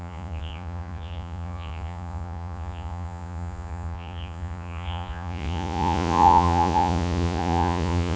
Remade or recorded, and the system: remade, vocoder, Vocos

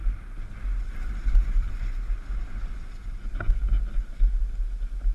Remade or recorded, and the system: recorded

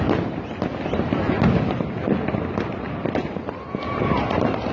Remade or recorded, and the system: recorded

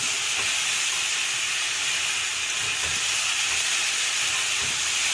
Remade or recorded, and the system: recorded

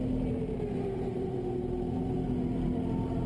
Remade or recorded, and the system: recorded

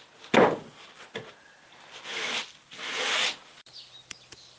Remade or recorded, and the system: recorded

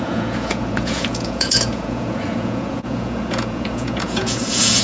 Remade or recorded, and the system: remade, vocoder, Vocos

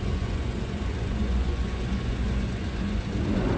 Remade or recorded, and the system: remade, vocoder, Vocos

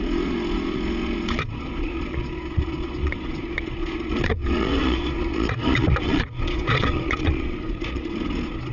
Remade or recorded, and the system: remade, vocoder, Vocos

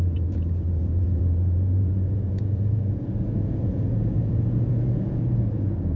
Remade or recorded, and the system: remade, vocoder, Vocos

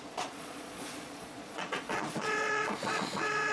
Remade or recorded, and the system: remade, vocoder, Vocos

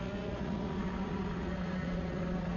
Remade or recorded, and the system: remade, vocoder, Vocos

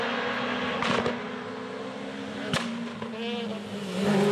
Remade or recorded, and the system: recorded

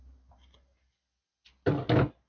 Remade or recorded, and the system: recorded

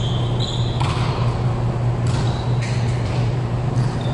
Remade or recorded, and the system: recorded